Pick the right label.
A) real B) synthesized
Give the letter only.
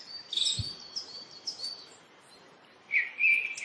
A